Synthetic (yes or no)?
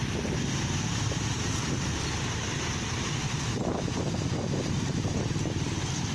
yes